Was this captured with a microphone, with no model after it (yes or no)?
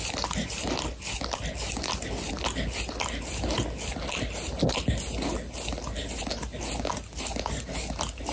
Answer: yes